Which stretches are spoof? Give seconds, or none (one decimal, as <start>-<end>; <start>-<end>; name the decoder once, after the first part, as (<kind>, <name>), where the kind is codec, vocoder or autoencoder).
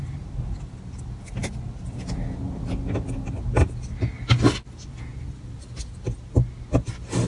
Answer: none